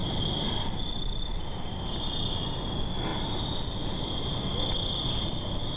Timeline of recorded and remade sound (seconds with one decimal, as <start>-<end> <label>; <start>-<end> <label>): 0.0-5.8 recorded